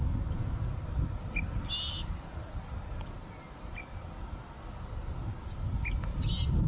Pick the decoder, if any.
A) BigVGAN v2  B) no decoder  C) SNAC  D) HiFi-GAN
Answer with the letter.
B